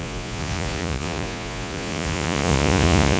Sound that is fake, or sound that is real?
fake